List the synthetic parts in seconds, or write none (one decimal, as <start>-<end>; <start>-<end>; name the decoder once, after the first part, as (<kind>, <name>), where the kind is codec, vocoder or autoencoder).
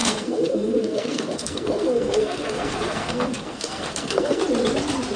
0.0-4.4 (codec, SNAC)